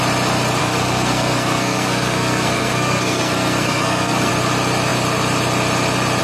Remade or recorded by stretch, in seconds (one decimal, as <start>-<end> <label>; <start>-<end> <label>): 0.0-0.6 recorded; 0.6-4.3 remade; 4.3-6.2 recorded